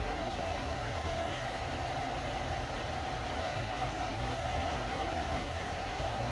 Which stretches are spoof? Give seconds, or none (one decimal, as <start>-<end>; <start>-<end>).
0.0-1.6; 3.4-6.3

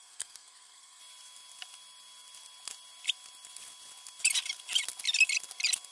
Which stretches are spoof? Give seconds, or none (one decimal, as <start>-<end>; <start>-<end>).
0.0-1.0

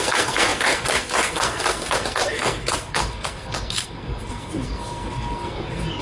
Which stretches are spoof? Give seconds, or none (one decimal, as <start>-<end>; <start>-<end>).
0.0-6.0

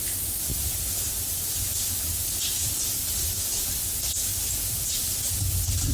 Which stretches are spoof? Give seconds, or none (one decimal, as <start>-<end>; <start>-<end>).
none

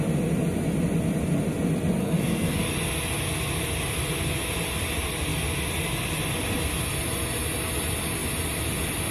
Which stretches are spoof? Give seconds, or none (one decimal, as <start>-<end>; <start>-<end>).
2.0-2.6